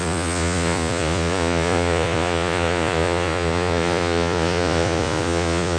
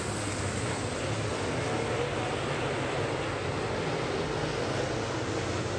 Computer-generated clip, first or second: first